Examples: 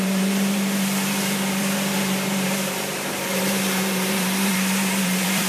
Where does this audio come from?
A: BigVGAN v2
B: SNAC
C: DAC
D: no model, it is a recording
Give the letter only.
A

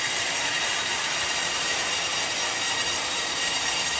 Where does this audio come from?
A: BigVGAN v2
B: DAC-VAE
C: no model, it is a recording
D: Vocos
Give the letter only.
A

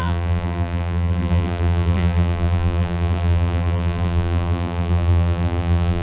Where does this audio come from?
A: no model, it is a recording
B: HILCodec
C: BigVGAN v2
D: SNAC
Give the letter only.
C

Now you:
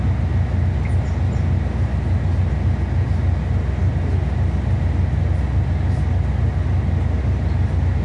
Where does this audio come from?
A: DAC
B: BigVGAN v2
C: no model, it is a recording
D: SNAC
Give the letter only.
C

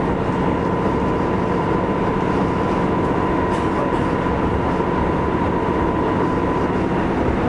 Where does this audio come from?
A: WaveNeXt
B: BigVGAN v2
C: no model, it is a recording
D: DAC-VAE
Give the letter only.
C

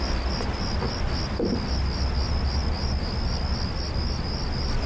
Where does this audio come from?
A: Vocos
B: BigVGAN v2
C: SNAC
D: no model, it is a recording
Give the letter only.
D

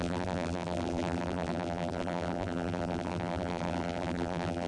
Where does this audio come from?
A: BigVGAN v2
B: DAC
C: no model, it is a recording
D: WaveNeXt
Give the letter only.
A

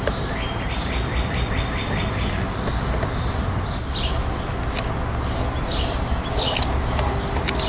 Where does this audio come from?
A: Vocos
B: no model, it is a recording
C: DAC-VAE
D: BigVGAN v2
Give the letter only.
B